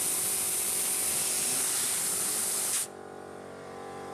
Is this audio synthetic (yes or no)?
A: yes